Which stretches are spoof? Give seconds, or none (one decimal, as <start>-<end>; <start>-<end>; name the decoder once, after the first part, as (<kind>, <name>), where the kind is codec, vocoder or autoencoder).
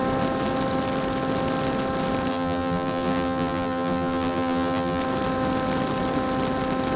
2.3-5.0 (vocoder, BigVGAN v2)